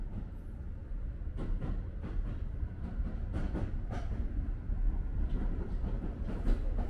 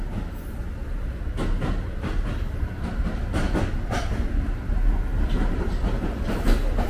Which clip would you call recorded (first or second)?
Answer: second